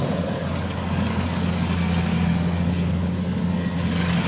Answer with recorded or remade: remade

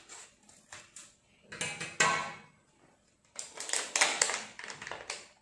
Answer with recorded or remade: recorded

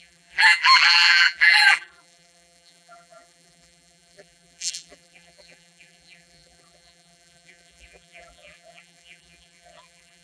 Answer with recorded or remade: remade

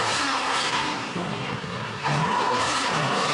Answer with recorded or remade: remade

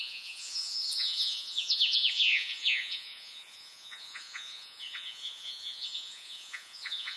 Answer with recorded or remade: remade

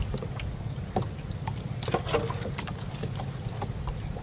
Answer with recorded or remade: recorded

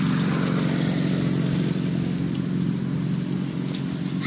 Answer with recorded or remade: recorded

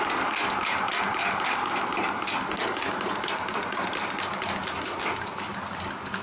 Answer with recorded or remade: recorded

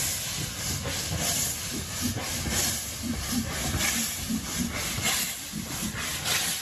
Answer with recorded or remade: recorded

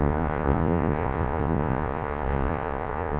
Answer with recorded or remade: remade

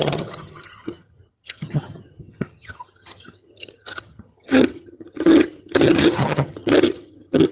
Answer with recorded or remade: remade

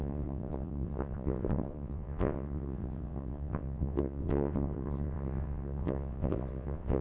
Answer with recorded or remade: remade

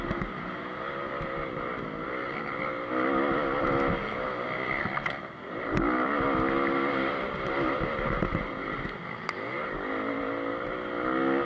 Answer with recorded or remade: recorded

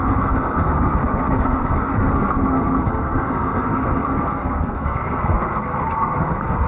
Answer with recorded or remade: remade